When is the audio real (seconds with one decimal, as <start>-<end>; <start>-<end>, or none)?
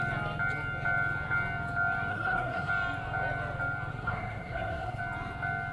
0.0-2.1; 2.7-3.9; 5.0-5.7